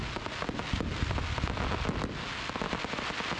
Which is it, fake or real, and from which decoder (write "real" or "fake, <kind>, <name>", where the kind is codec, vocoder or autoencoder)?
real